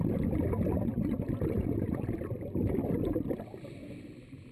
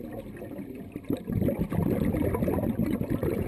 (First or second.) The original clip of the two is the first